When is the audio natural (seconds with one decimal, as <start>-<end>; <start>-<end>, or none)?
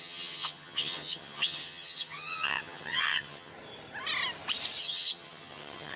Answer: 3.5-4.8